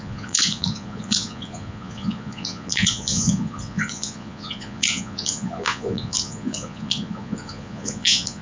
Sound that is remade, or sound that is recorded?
remade